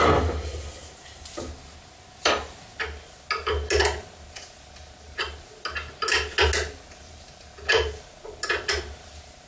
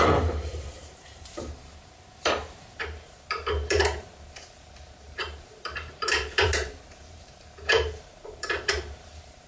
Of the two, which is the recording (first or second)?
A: first